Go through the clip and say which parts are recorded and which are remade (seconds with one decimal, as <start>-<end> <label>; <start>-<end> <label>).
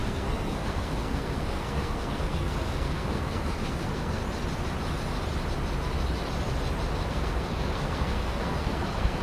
0.0-4.2 remade; 4.2-7.1 recorded; 7.1-9.2 remade